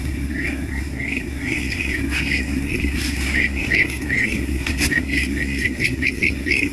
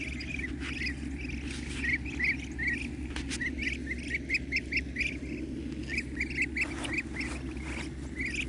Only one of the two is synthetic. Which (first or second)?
first